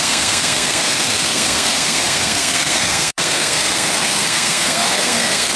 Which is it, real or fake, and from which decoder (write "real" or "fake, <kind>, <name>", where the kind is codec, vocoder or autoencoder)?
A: fake, codec, SNAC